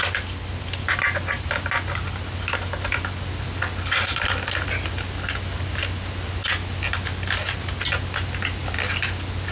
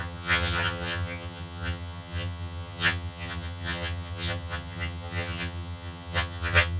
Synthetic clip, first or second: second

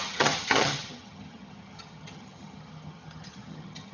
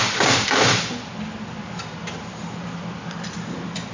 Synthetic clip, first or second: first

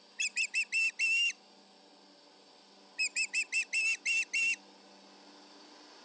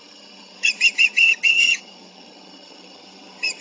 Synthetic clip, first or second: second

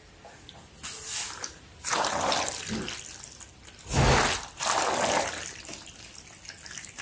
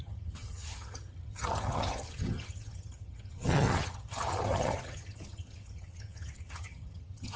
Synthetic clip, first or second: second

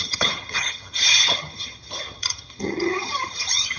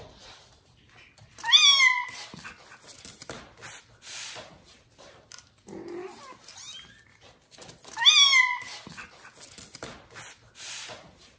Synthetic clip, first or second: first